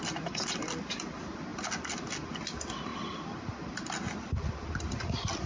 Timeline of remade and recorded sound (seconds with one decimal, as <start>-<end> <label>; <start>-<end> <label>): 0.0-5.5 recorded